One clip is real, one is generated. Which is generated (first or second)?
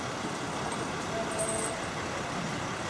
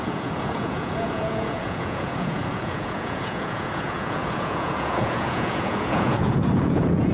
second